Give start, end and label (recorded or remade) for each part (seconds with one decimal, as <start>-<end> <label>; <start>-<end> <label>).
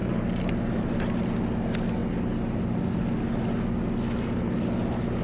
0.0-5.2 recorded